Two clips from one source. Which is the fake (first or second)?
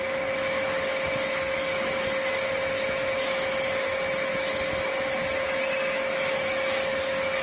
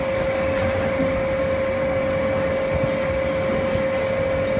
first